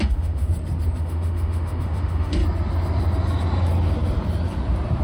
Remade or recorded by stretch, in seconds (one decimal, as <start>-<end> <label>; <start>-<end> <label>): 0.0-0.5 remade; 0.5-1.0 recorded; 1.0-2.4 remade; 2.4-5.0 recorded